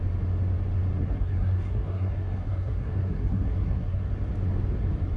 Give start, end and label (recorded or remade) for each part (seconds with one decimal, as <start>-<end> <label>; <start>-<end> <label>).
0.0-1.0 recorded; 1.0-4.1 remade; 4.1-5.2 recorded